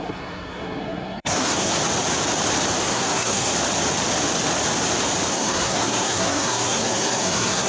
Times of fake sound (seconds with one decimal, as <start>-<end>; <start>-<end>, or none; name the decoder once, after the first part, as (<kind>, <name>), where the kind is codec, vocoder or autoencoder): 0.0-1.7 (codec, SNAC); 2.8-3.5; 5.3-7.7